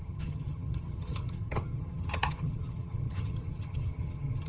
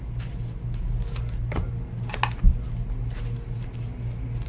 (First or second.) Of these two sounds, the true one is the second